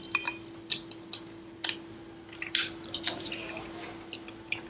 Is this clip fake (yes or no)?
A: no